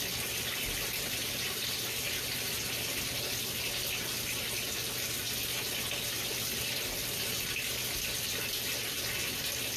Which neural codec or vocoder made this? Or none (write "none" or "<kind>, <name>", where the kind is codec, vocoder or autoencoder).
none